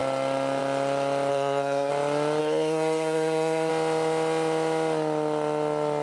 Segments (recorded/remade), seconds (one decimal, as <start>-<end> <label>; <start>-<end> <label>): 0.0-1.3 recorded; 1.3-1.9 remade; 1.9-2.4 recorded; 2.4-3.7 remade; 3.7-6.0 recorded